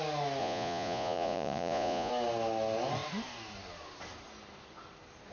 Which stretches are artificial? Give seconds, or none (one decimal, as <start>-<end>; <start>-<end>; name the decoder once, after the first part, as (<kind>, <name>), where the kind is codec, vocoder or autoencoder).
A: 0.4-2.1 (vocoder, Vocos)